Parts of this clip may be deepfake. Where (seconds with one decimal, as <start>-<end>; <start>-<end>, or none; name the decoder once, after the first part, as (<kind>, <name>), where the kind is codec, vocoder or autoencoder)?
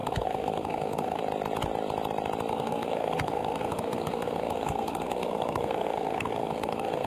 0.0-1.2 (codec, SNAC); 2.5-7.1